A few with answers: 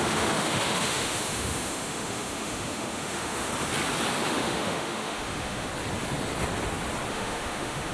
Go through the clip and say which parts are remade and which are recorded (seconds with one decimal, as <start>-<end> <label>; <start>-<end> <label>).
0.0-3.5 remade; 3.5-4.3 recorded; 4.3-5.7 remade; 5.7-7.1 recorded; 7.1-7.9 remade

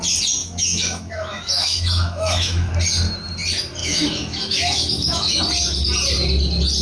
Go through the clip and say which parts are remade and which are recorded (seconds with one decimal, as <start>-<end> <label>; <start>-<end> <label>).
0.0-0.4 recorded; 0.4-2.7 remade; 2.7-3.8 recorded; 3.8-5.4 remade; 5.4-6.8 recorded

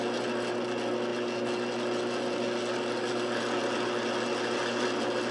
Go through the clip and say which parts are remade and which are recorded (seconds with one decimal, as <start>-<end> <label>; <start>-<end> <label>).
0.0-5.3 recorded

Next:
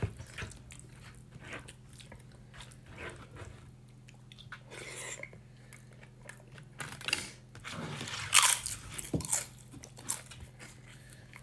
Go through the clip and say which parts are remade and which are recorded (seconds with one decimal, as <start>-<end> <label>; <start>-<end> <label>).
0.0-10.9 recorded; 10.9-11.4 remade

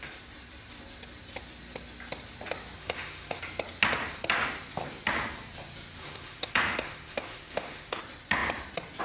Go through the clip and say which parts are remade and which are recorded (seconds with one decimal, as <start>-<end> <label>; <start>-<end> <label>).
0.0-2.8 recorded; 2.8-3.4 remade; 3.4-6.0 recorded; 6.0-8.0 remade; 8.0-9.0 recorded

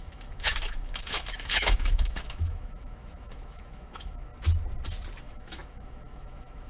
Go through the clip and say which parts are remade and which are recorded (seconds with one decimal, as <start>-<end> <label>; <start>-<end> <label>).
0.0-4.3 remade; 4.3-5.2 recorded; 5.2-6.7 remade

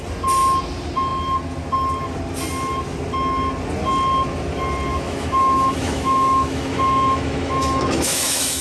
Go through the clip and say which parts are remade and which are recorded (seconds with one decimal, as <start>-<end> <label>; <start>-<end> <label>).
0.0-4.9 recorded; 4.9-8.6 remade